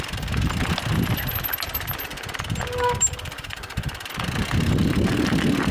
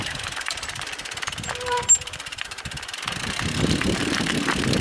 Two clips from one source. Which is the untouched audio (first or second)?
first